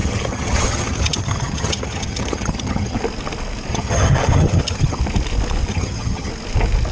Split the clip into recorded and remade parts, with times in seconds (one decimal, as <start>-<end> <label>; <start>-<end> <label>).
0.0-3.0 remade; 3.0-3.7 recorded; 3.7-5.0 remade; 5.0-5.7 recorded; 5.7-6.3 remade; 6.3-6.9 recorded